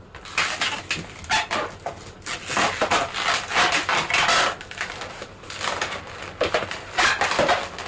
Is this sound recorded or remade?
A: recorded